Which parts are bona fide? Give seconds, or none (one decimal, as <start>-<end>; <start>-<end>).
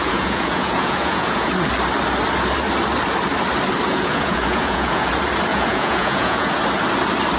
1.5-3.9; 5.1-5.5; 6.5-7.4